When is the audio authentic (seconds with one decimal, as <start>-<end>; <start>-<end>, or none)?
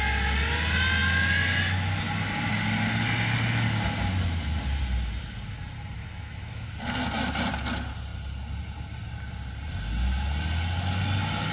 0.0-6.0; 6.7-11.5